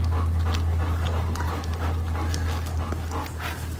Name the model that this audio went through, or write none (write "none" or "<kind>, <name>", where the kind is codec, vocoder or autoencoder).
none